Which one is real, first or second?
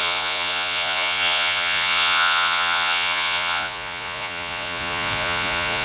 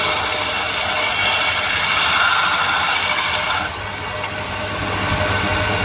second